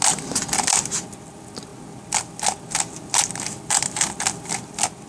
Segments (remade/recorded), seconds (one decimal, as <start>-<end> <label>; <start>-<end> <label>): 0.0-5.1 recorded